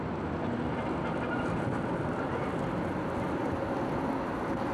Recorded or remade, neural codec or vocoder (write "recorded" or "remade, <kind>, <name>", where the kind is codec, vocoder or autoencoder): recorded